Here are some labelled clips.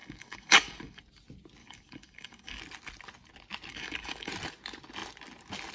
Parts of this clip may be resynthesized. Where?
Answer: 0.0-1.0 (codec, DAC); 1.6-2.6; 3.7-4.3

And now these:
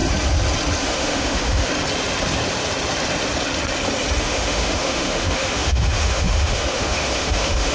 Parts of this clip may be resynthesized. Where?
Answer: 0.8-1.7 (autoencoder, DAC-VAE); 4.2-7.7

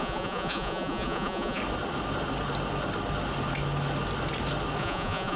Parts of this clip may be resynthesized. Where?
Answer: 0.0-1.6 (vocoder, Vocos); 4.8-5.4

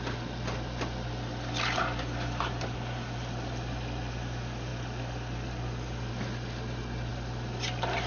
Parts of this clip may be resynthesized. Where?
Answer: none